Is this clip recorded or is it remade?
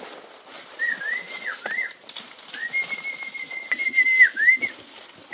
recorded